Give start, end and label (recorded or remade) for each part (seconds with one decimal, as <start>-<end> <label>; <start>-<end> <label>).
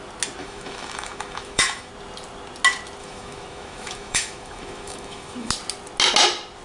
0.0-0.4 recorded; 0.4-1.9 remade; 1.9-3.0 recorded; 3.0-5.5 remade; 5.5-6.6 recorded